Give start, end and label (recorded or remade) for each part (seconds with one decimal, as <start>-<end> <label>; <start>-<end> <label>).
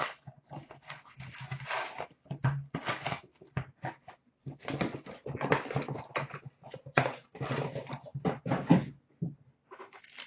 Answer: 0.0-10.3 recorded